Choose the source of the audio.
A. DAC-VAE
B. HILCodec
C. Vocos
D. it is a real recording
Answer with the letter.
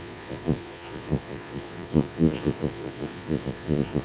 C